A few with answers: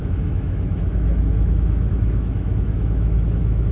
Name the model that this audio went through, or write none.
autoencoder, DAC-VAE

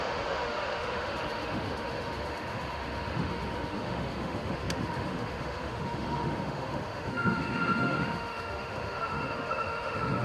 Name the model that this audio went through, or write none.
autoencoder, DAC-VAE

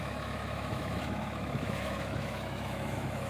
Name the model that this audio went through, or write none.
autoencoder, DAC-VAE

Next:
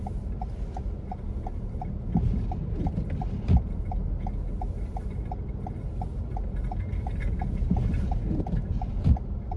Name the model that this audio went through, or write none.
none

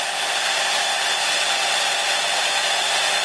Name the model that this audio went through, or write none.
none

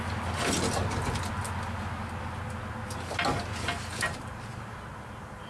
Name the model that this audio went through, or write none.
none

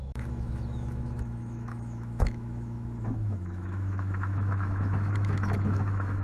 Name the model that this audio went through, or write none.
autoencoder, DAC-VAE